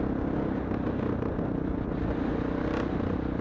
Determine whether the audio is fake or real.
real